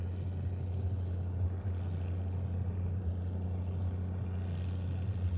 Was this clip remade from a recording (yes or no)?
no